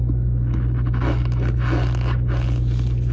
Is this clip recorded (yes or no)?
yes